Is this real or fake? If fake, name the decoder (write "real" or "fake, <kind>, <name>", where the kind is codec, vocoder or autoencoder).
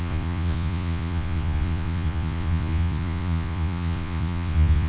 fake, vocoder, Vocos